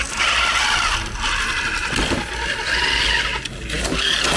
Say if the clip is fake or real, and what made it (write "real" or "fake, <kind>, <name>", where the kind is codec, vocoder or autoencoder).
real